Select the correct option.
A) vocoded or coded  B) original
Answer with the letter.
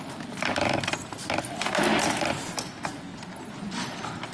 B